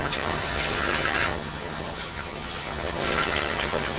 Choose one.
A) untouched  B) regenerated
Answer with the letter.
B